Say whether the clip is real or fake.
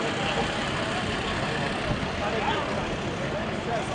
real